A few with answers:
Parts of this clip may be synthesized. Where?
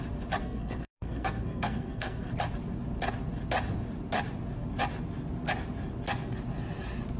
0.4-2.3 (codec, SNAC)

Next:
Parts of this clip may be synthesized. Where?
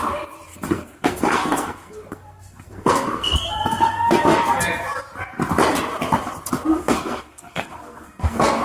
0.5-4.6 (codec, SNAC); 6.8-8.6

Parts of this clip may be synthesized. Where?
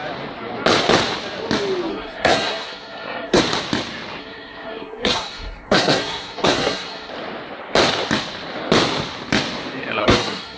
1.9-3.4 (codec, SNAC); 4.2-7.1; 10.0-10.6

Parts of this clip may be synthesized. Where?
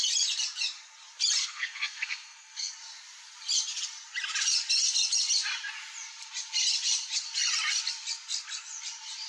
1.4-2.7 (codec, SNAC)